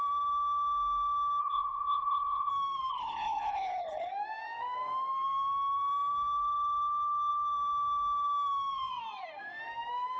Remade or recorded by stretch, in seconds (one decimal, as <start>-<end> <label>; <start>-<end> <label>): 0.0-1.4 recorded; 1.4-2.5 remade; 2.5-2.9 recorded; 2.9-4.1 remade; 4.1-10.2 recorded